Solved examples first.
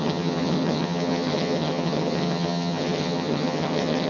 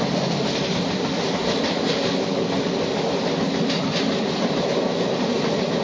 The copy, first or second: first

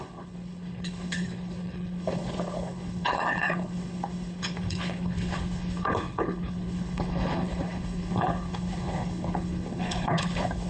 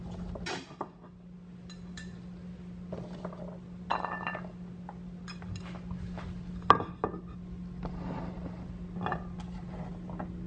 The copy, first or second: first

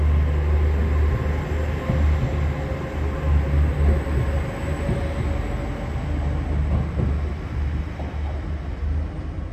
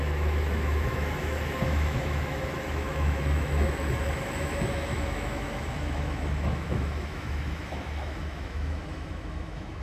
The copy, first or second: second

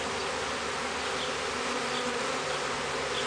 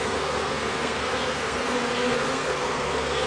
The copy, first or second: second